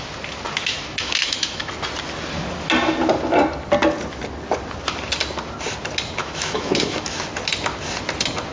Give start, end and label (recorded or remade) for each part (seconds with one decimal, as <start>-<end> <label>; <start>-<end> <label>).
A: 0.0-0.7 recorded; 0.7-1.7 remade; 1.7-6.2 recorded; 6.2-7.2 remade; 7.2-8.5 recorded